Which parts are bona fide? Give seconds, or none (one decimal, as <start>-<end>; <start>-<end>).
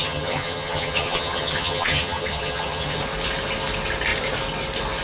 3.0-5.0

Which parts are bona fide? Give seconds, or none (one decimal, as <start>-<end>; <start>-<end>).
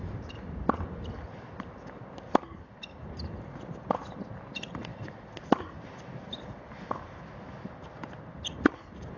0.0-9.2